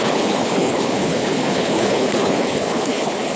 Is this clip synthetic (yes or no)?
yes